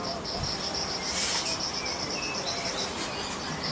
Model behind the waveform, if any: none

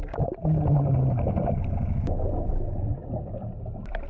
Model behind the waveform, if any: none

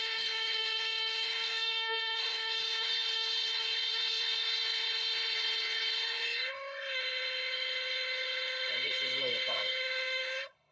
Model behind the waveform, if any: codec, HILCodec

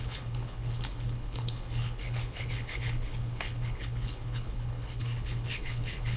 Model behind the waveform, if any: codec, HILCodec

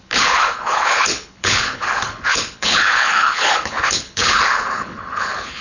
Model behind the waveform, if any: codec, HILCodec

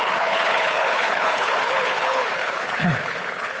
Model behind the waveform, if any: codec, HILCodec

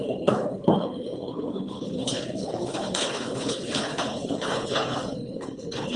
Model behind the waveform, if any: codec, HILCodec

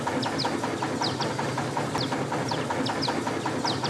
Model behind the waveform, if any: none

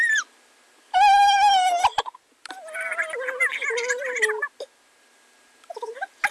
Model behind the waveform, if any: none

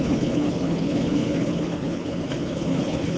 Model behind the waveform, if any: codec, HILCodec